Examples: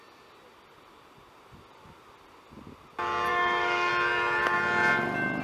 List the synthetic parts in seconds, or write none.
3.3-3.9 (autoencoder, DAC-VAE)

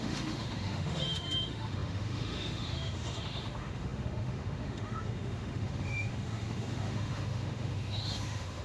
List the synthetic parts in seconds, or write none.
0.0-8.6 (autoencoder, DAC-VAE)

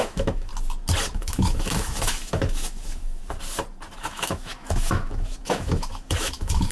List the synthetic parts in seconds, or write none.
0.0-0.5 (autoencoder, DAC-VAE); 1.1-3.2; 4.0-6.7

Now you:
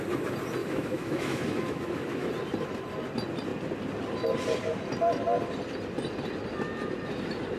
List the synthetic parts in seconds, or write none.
0.6-2.3 (autoencoder, DAC-VAE)